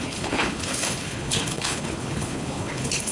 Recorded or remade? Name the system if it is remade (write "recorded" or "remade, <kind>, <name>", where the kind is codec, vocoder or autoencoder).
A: remade, codec, HILCodec